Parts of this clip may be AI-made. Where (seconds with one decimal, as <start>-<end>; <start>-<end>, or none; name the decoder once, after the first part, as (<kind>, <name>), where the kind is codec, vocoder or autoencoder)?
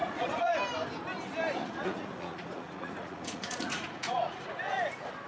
0.0-0.5 (vocoder, Vocos); 1.6-4.8